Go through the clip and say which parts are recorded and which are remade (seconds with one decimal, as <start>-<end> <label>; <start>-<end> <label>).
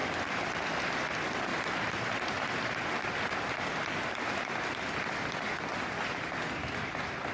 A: 0.0-7.3 recorded